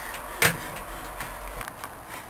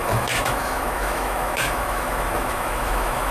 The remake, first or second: second